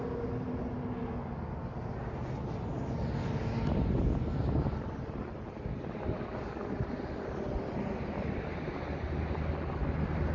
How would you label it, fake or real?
real